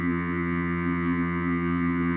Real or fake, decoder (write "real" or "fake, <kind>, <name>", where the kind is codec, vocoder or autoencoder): fake, vocoder, HiFi-GAN